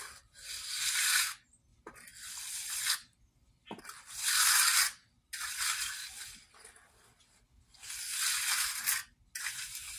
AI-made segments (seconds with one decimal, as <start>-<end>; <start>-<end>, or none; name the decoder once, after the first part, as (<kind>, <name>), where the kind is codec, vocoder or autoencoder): none